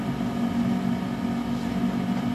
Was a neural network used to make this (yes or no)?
no